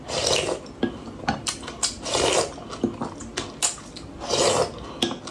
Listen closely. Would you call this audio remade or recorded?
recorded